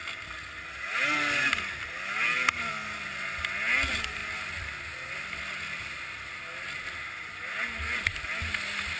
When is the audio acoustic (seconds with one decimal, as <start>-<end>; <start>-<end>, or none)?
0.0-9.0